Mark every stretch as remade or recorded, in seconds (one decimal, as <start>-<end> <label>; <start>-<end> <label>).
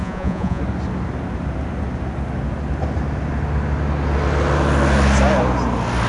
0.0-0.6 remade; 0.6-6.1 recorded